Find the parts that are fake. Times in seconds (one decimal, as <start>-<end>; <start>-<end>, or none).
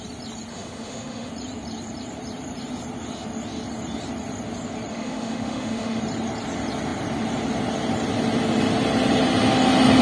0.5-1.3; 4.9-6.0